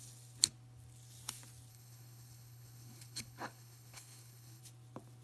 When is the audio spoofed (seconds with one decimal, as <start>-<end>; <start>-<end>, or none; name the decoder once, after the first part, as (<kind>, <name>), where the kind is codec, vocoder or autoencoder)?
1.7-4.6 (codec, HILCodec)